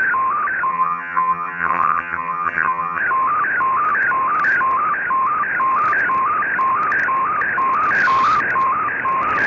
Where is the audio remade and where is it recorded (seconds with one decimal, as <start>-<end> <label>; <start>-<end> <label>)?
0.0-0.7 recorded; 0.7-3.0 remade; 3.0-9.5 recorded